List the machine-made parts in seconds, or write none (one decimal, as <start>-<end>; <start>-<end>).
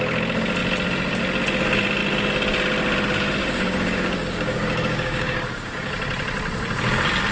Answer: 3.4-5.9